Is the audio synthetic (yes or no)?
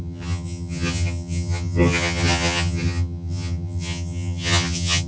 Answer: yes